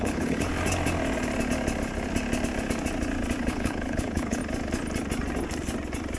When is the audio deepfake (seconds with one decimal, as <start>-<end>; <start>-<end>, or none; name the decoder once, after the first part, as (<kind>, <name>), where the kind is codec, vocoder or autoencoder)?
0.0-0.5 (codec, HILCodec); 3.4-4.4